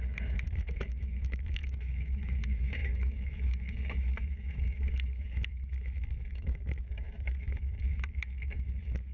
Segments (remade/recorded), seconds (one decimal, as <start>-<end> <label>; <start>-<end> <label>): 0.0-9.1 remade